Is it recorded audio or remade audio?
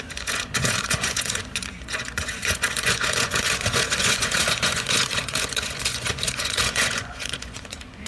remade